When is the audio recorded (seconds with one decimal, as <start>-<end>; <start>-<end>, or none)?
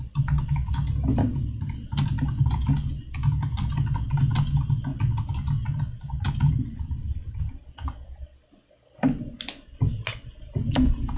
0.0-11.2